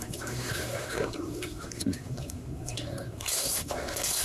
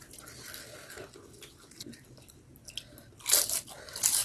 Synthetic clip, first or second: first